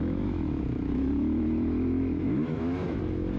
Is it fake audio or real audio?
fake